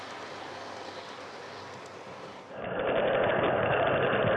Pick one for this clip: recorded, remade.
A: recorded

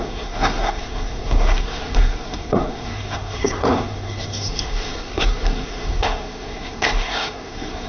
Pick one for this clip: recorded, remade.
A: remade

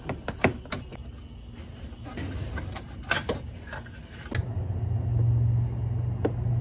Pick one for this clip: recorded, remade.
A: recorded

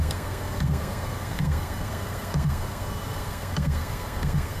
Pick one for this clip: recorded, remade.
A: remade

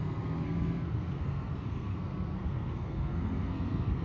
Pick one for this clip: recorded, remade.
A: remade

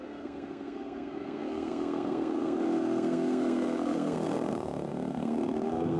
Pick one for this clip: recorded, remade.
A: remade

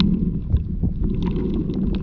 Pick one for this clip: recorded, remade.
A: recorded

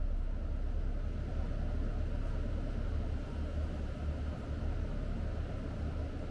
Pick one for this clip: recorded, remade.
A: recorded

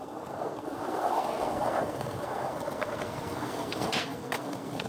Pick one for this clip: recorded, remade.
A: remade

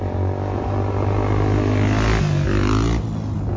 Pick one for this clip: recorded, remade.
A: recorded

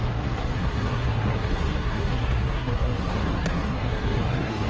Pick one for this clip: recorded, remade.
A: remade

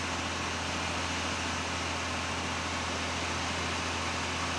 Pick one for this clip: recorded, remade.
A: recorded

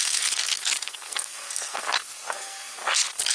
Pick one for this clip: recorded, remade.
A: remade